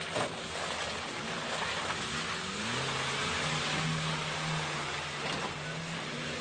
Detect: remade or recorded recorded